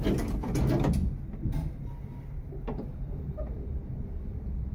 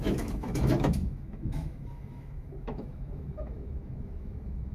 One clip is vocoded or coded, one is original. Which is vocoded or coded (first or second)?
second